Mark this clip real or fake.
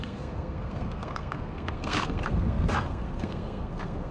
fake